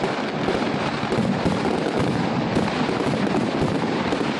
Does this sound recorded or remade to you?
remade